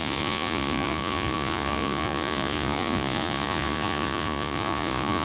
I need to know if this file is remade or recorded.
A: remade